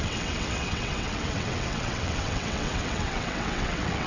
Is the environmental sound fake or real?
fake